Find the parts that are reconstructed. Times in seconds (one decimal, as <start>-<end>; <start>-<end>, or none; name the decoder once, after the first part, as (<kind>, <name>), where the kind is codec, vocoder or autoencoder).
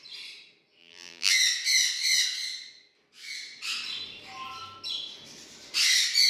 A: 0.8-1.3 (vocoder, BigVGAN v2)